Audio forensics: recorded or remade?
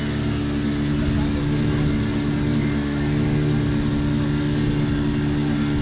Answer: recorded